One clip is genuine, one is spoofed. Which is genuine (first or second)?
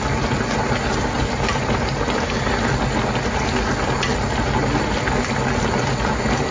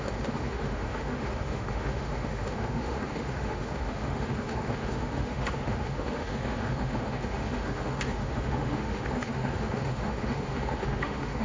first